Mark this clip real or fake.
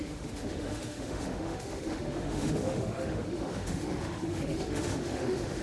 fake